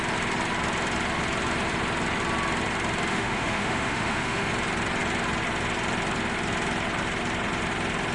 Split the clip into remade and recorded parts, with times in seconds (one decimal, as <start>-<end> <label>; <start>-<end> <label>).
0.0-3.1 recorded; 3.1-4.5 remade; 4.5-8.1 recorded